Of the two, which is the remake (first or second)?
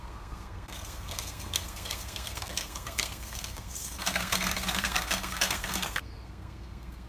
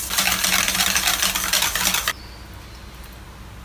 first